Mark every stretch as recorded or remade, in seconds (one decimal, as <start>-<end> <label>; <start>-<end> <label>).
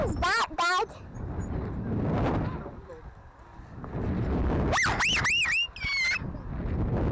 0.0-7.1 recorded